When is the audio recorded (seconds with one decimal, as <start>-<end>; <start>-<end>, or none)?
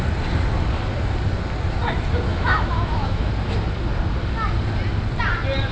0.0-2.3; 3.3-5.7